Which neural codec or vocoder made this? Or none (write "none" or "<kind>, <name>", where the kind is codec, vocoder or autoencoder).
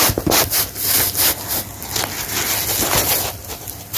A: none